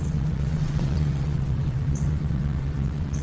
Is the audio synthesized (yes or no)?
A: yes